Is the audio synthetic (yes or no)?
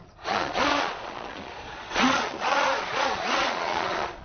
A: yes